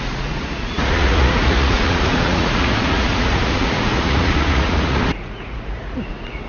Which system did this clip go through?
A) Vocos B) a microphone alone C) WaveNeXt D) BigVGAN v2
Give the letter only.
A